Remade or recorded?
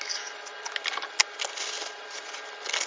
recorded